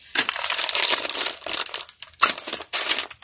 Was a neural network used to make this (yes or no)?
no